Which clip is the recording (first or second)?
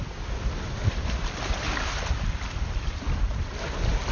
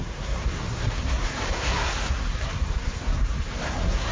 first